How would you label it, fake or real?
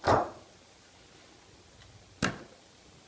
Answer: real